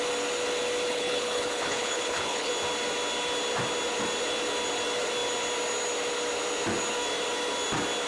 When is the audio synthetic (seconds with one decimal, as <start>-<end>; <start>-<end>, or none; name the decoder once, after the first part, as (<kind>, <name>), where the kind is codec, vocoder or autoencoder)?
0.9-2.5 (codec, HILCodec)